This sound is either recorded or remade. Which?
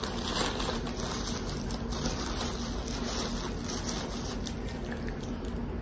recorded